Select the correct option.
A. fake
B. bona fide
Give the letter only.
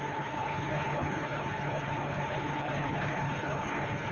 A